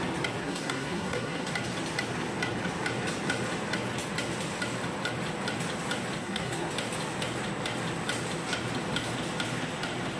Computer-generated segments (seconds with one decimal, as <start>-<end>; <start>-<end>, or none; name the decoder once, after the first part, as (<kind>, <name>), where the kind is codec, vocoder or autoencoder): 0.4-1.5 (codec, SNAC); 6.2-6.7